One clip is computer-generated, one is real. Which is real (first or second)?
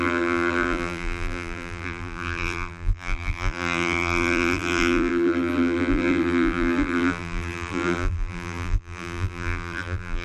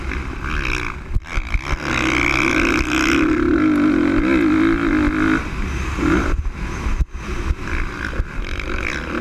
second